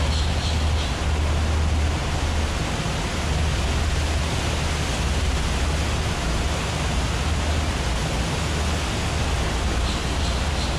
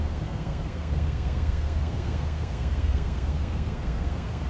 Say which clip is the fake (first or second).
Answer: second